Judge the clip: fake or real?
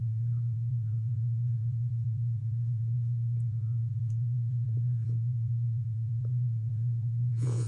fake